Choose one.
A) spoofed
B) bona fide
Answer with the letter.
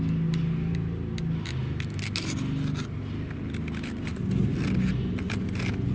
B